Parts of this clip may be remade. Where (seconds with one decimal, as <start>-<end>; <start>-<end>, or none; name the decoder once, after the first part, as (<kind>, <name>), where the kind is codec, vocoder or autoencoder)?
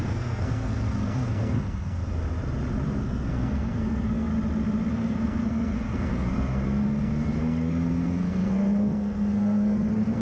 0.0-2.0 (codec, SNAC); 3.0-4.3; 4.9-10.2